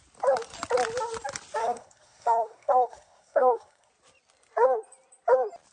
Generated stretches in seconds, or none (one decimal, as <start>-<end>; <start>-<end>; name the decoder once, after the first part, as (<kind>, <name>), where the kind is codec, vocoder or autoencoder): 1.6-3.9 (codec, SNAC)